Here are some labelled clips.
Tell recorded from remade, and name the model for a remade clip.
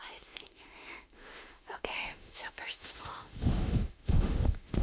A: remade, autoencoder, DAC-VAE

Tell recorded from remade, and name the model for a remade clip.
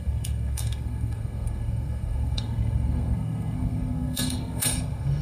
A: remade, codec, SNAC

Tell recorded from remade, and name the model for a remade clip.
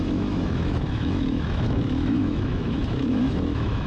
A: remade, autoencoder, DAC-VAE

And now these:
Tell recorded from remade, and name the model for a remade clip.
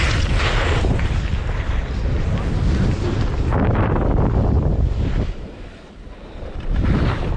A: recorded